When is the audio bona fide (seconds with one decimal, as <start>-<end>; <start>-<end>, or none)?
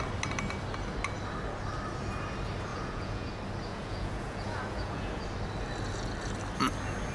0.0-2.7; 3.3-3.7; 5.2-7.1